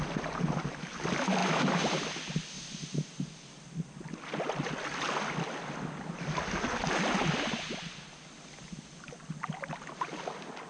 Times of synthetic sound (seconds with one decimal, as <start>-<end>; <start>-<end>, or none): none